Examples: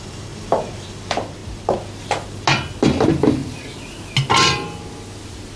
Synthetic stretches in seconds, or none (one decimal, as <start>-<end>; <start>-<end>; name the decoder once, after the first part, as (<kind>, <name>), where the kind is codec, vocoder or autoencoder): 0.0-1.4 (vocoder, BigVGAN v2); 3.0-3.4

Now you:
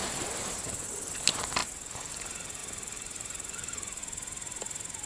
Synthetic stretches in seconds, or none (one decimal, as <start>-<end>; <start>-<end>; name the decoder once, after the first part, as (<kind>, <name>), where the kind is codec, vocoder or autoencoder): 0.0-1.1 (vocoder, BigVGAN v2); 2.6-4.0

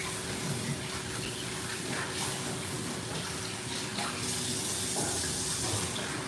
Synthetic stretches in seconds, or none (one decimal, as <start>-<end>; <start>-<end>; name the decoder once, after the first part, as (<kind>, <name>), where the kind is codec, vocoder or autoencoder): none

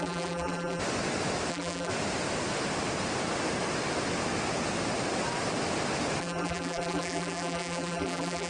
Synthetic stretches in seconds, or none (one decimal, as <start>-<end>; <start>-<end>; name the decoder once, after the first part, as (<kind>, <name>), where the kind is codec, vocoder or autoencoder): 0.0-0.8 (vocoder, BigVGAN v2); 1.5-1.9; 6.2-8.5